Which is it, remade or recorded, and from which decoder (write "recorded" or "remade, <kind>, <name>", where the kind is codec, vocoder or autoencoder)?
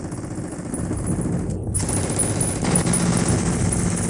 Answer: recorded